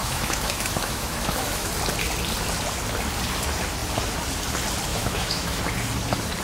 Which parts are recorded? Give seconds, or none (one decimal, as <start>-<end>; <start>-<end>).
1.7-4.9; 5.6-6.4